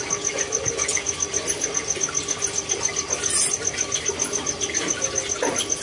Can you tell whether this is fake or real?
real